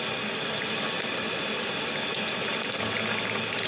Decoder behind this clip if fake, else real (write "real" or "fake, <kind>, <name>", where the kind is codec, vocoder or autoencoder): real